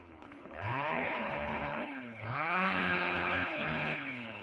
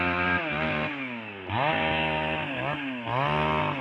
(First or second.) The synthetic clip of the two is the first